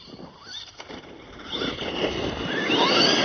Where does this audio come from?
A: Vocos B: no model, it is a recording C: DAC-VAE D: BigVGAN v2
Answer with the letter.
D